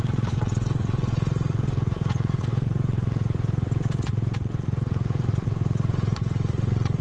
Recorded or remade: remade